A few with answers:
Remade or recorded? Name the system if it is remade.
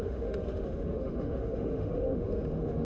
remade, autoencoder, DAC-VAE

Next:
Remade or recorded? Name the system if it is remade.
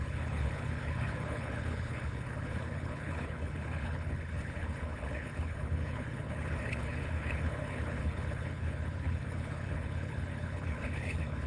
remade, codec, HILCodec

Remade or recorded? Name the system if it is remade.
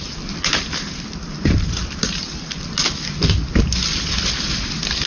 recorded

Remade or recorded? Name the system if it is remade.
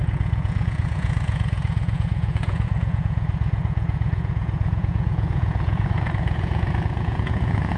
remade, vocoder, Vocos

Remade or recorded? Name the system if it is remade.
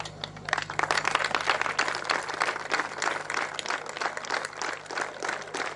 recorded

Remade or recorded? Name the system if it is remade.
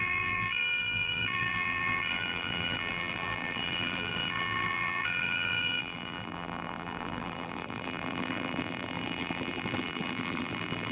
remade, vocoder, BigVGAN v2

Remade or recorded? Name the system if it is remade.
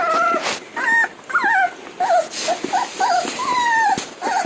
recorded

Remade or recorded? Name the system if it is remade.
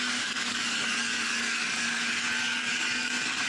remade, codec, DAC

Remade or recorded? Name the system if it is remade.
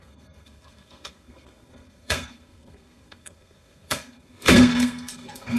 remade, codec, SNAC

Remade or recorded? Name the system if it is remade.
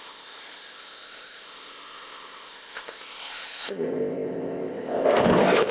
remade, codec, ZipCodec